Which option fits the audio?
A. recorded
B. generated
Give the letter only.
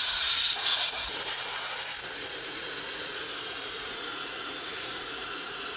B